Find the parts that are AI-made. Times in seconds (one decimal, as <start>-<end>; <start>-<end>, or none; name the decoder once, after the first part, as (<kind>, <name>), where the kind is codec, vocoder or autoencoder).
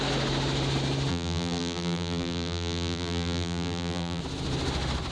1.1-4.2 (vocoder, BigVGAN v2)